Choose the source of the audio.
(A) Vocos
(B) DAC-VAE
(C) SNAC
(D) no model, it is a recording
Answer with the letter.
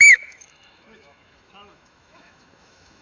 B